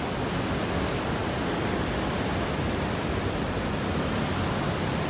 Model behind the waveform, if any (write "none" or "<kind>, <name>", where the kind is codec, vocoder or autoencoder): none